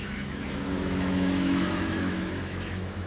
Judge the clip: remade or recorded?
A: remade